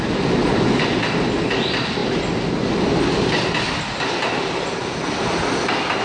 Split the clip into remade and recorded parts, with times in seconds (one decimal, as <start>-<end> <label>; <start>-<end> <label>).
0.0-6.0 recorded